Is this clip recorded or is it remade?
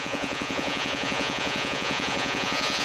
remade